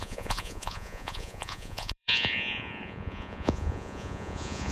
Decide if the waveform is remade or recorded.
remade